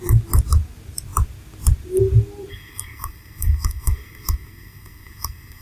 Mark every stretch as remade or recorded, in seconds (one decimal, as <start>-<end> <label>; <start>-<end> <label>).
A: 0.0-2.5 recorded; 2.5-5.6 remade